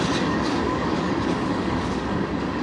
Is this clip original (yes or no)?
no